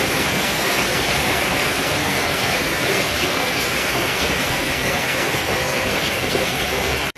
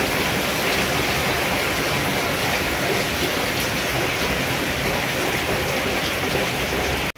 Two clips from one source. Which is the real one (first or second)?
second